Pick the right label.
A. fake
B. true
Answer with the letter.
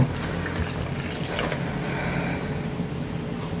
B